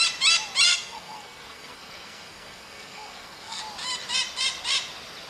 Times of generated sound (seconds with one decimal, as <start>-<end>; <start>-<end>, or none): 0.7-3.6